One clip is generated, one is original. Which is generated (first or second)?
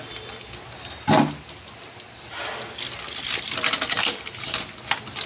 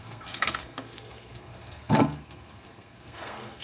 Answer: second